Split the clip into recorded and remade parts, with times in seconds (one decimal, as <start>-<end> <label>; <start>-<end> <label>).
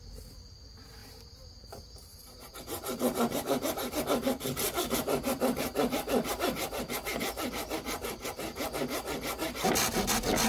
0.0-1.0 recorded; 1.0-3.9 remade; 3.9-10.5 recorded